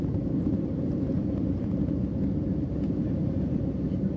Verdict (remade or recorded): remade